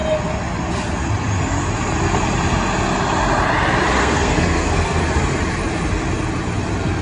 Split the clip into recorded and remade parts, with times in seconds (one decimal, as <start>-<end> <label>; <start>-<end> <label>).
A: 0.0-4.0 recorded; 4.0-5.0 remade; 5.0-7.0 recorded